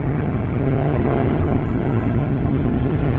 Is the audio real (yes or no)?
no